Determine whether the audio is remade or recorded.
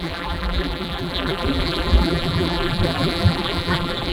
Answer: remade